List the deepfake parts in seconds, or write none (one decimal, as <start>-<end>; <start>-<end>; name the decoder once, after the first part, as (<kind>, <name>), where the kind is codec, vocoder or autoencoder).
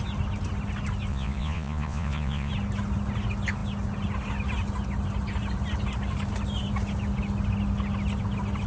1.1-2.5 (vocoder, Vocos)